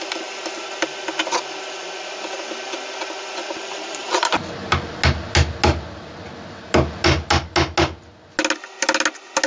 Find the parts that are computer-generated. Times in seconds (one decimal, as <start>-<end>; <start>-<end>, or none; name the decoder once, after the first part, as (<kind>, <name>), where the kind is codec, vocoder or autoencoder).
3.4-4.8 (vocoder, BigVGAN v2)